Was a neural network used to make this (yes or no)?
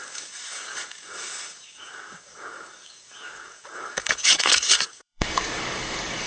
yes